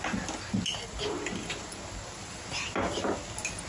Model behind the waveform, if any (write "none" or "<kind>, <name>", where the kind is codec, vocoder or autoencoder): none